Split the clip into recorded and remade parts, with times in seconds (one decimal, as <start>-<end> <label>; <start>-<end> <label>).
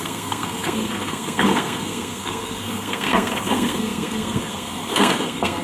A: 0.0-5.6 remade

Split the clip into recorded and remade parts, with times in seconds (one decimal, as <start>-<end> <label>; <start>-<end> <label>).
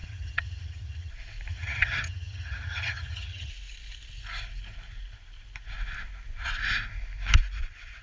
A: 0.0-1.1 remade; 1.1-1.5 recorded; 1.5-3.5 remade; 3.5-8.0 recorded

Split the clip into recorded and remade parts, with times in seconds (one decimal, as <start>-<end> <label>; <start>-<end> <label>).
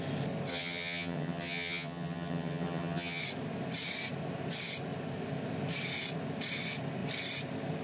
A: 0.0-0.5 recorded; 0.5-3.2 remade; 3.2-7.8 recorded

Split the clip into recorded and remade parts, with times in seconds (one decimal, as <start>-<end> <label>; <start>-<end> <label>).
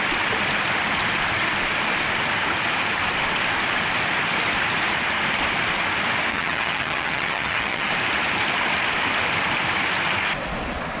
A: 0.0-6.3 recorded; 6.3-7.9 remade; 7.9-11.0 recorded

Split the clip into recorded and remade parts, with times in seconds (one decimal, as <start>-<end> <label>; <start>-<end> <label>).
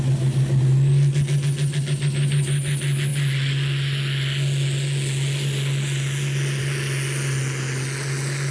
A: 0.0-8.5 recorded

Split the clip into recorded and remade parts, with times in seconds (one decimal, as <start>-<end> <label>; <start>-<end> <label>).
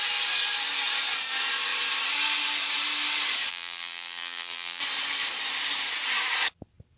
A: 0.0-3.5 recorded; 3.5-4.8 remade; 4.8-7.0 recorded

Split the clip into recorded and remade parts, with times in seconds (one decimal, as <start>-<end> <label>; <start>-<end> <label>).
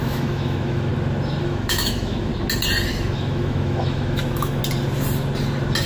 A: 0.0-0.9 remade; 0.9-1.4 recorded; 1.4-2.3 remade; 2.3-2.9 recorded; 2.9-4.6 remade; 4.6-5.9 recorded